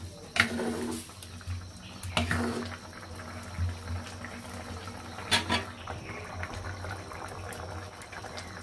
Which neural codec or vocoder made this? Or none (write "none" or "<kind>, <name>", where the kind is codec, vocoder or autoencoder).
none